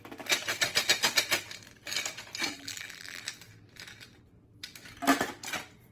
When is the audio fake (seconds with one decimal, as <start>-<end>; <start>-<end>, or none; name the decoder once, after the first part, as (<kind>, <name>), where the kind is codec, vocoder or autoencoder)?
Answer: 2.5-3.2 (vocoder, BigVGAN v2)